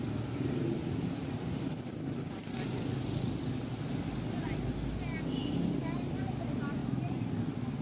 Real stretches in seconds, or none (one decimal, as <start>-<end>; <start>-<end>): 0.0-6.8; 7.3-7.8